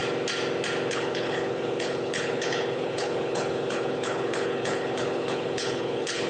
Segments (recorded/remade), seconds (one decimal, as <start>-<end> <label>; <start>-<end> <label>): 0.0-0.9 recorded; 0.9-6.3 remade